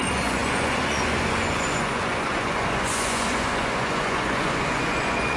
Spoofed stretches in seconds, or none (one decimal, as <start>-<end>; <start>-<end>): 0.0-5.4